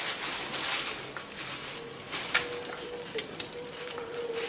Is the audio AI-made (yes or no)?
no